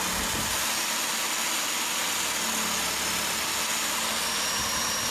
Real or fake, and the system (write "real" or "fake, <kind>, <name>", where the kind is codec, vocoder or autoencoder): real